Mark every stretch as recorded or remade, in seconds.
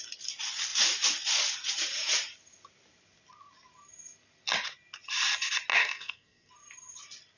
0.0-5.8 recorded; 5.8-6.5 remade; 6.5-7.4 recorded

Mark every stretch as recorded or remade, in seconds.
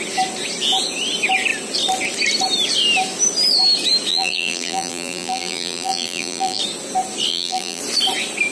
0.0-4.1 recorded; 4.1-6.6 remade; 6.6-7.3 recorded; 7.3-7.8 remade; 7.8-8.5 recorded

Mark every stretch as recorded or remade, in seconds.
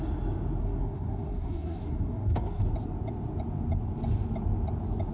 0.0-0.6 recorded; 0.6-2.6 remade; 2.6-5.1 recorded